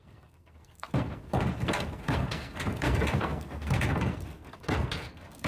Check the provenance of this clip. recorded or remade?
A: remade